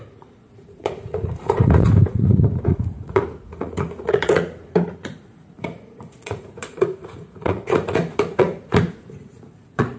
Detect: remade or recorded remade